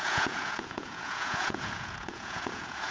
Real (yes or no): no